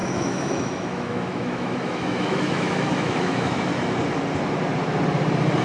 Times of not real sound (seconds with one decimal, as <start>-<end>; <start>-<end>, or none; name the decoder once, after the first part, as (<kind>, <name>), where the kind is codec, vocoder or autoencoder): 0.0-3.7 (autoencoder, DAC-VAE)